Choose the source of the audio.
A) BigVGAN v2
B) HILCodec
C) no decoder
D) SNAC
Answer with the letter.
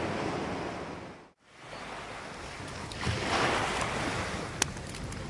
C